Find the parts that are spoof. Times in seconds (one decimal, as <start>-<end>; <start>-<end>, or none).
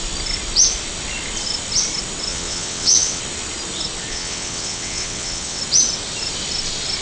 2.3-3.2; 4.1-5.6